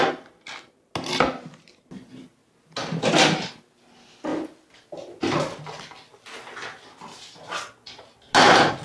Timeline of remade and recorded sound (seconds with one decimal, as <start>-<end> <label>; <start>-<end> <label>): 0.0-8.8 recorded